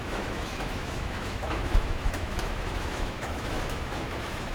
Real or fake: fake